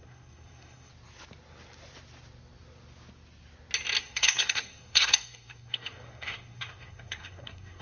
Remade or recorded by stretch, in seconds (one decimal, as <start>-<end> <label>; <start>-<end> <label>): 0.0-0.9 remade; 0.9-4.0 recorded; 4.0-7.8 remade